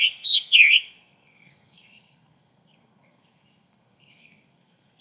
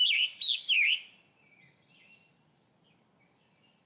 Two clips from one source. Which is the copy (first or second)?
first